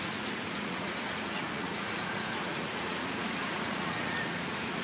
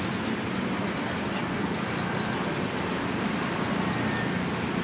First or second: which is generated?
first